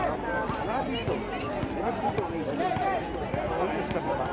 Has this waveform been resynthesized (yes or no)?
no